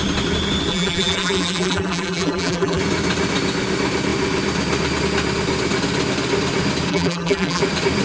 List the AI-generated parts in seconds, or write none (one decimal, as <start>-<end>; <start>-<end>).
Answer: 0.7-2.8; 6.9-7.6